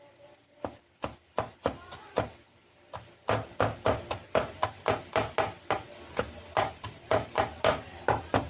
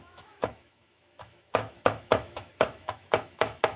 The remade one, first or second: second